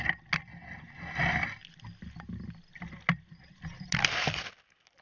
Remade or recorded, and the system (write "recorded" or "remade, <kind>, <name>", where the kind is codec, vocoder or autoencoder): recorded